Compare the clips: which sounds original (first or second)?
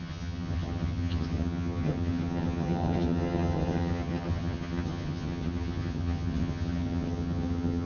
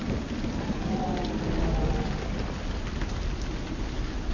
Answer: second